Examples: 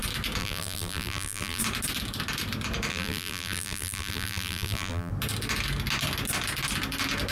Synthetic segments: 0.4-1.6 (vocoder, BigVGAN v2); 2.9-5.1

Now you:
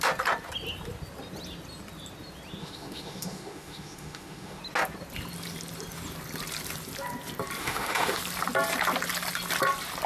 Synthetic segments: 2.6-4.6 (autoencoder, DAC-VAE); 7.6-8.2

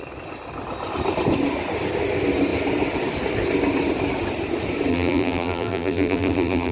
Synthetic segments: 4.9-6.7 (vocoder, BigVGAN v2)

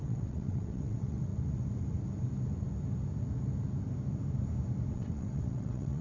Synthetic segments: 0.0-1.3 (vocoder, WaveNeXt); 4.9-6.0